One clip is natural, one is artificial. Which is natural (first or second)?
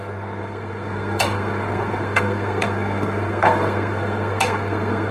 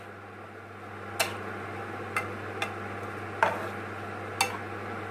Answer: second